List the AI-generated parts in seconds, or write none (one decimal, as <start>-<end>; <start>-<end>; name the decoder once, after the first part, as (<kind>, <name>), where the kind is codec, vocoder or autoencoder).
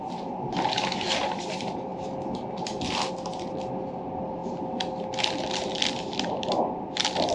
none